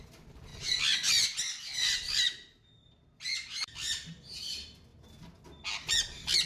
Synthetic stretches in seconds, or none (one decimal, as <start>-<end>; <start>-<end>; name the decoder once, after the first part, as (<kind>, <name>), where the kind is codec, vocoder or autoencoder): none